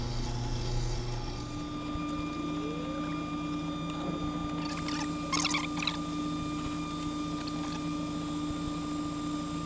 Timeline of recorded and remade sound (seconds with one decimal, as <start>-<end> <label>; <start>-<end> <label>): 0.0-9.7 recorded